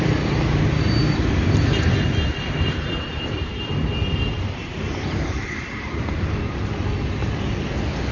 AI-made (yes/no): no